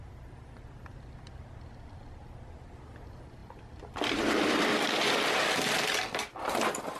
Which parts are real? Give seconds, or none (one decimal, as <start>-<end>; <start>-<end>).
0.0-3.4; 5.5-7.0